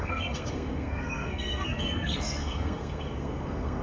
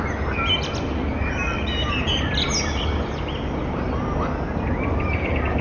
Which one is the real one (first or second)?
second